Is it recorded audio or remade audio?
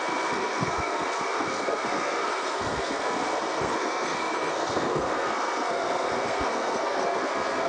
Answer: remade